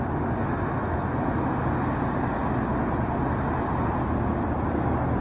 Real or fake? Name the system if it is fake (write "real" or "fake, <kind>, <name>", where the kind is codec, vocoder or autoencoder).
real